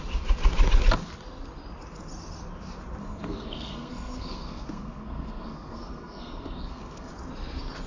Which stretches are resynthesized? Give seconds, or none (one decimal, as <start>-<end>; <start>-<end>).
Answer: 3.0-7.1